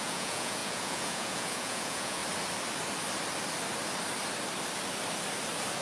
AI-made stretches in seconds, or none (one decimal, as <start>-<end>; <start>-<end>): 0.0-2.2